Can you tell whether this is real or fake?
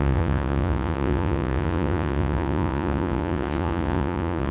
fake